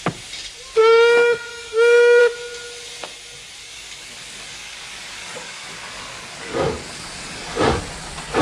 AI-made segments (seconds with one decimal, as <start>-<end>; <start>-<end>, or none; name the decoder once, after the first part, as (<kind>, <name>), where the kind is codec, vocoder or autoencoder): 0.8-2.2 (codec, DAC); 3.6-7.8

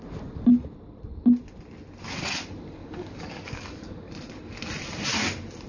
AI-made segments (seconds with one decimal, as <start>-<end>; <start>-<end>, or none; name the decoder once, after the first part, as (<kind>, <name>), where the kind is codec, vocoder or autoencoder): 2.8-4.1 (codec, DAC)

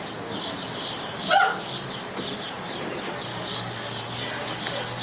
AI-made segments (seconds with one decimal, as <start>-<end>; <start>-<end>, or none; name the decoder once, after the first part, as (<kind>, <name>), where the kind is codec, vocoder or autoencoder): 1.5-2.5 (codec, DAC); 3.3-4.0

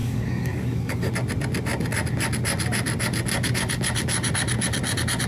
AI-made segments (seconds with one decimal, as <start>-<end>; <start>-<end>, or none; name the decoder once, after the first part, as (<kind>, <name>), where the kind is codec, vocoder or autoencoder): 0.0-1.1 (codec, DAC)